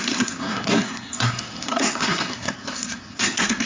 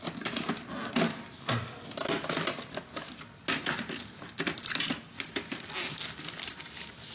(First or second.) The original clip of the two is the second